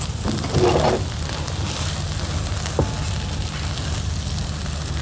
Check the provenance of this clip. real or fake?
real